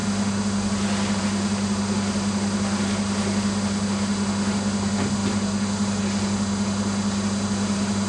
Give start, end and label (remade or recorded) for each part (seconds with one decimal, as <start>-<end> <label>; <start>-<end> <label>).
0.0-8.1 recorded

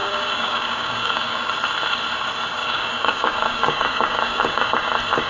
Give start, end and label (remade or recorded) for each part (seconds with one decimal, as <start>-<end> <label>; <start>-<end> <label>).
0.0-1.5 remade; 1.5-2.6 recorded; 2.6-4.7 remade; 4.7-5.3 recorded

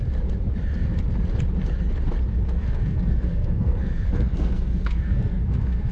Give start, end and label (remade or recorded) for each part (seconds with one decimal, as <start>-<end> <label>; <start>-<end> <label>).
0.0-2.3 recorded; 2.3-5.9 remade